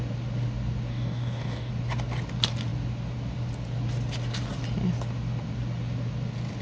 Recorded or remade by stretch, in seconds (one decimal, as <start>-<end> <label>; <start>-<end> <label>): 0.0-0.9 recorded; 0.9-1.7 remade; 1.7-6.6 recorded